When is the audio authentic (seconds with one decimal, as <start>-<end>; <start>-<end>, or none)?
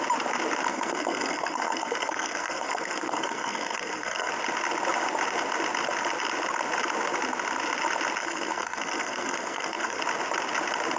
0.0-0.7; 4.3-8.2; 10.0-11.0